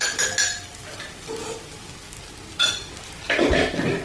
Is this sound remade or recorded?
recorded